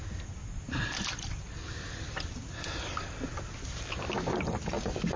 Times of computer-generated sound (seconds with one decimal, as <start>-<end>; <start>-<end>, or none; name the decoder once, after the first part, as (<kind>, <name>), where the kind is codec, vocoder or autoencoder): 0.0-1.5 (vocoder, BigVGAN v2)

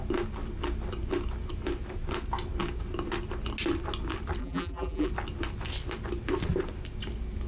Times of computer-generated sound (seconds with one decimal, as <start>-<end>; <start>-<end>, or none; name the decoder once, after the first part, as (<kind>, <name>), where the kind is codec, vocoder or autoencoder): 4.4-5.1 (vocoder, BigVGAN v2)